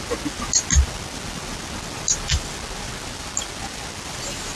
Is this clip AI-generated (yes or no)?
no